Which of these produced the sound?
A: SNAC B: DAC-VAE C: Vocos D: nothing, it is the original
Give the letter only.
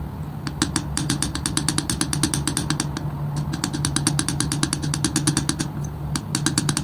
D